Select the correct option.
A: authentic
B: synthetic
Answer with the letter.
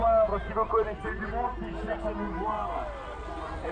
A